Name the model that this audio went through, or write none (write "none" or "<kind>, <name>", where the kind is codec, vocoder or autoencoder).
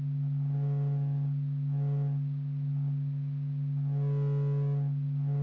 none